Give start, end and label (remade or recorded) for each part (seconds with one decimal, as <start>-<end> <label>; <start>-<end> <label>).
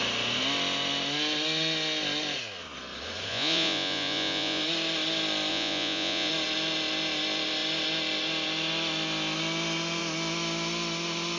0.0-3.3 recorded; 3.3-4.6 remade; 4.6-5.5 recorded; 5.5-6.3 remade; 6.3-11.4 recorded